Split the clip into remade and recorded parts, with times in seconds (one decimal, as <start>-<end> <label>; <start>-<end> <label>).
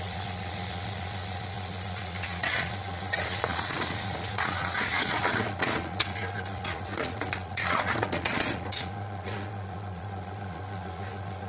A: 0.0-11.5 remade